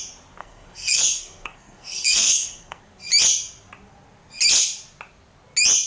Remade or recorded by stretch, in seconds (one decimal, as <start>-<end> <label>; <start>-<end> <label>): 0.0-0.4 recorded; 0.4-2.8 remade; 2.8-5.9 recorded

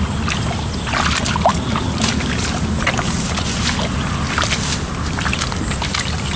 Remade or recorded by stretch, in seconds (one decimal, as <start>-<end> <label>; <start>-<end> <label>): 0.0-6.4 recorded

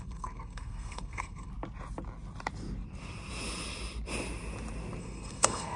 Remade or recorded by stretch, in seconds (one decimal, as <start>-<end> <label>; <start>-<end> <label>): 0.0-1.5 remade; 1.5-5.0 recorded; 5.0-5.8 remade

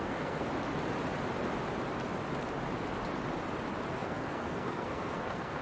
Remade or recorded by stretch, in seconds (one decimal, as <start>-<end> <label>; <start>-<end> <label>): 0.0-0.5 remade; 0.5-3.9 recorded; 3.9-5.6 remade

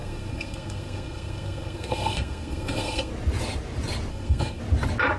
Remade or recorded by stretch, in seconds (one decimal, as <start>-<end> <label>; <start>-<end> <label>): 0.0-3.1 remade; 3.1-4.1 recorded; 4.1-4.6 remade; 4.6-5.2 recorded